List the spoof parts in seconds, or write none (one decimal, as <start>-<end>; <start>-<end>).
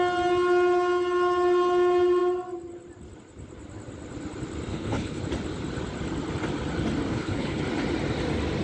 4.7-5.2; 7.1-7.6